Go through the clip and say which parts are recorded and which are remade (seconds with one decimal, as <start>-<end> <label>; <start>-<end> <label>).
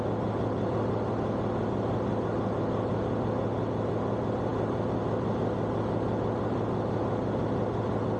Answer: 0.0-8.2 recorded